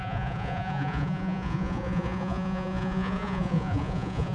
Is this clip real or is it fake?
fake